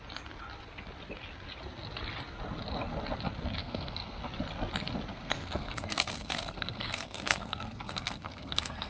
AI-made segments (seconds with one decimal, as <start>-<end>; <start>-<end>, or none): 3.6-4.2; 5.1-8.9